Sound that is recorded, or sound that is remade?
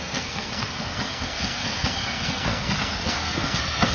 remade